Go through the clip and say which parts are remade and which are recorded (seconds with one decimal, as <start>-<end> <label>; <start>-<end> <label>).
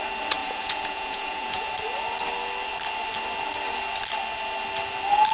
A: 0.0-0.4 recorded; 0.4-1.6 remade; 1.6-5.3 recorded